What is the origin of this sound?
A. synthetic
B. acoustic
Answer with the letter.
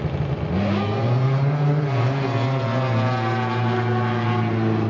B